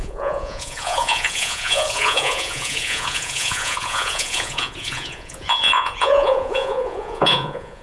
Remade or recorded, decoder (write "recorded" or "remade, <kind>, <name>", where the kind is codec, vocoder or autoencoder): remade, vocoder, Vocos